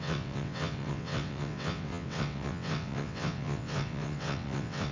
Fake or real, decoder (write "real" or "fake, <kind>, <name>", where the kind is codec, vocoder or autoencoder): fake, vocoder, WaveNeXt